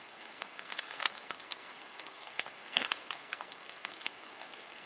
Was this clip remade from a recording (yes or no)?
yes